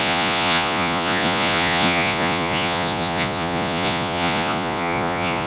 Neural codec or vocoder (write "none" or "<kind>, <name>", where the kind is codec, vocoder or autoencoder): vocoder, Vocos